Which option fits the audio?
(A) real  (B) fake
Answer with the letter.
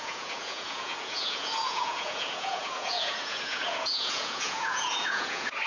B